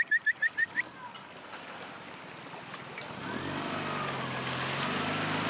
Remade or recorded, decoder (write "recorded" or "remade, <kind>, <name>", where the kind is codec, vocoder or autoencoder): recorded